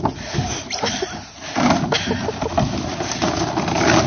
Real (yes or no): yes